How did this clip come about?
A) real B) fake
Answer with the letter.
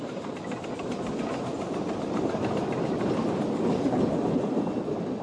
A